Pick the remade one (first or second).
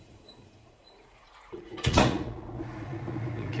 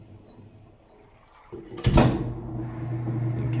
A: first